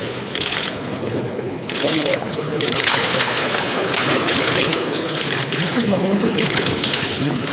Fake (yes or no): yes